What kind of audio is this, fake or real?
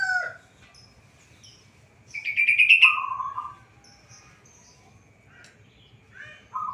real